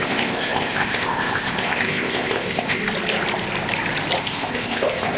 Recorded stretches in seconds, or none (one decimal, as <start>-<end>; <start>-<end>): 2.8-4.2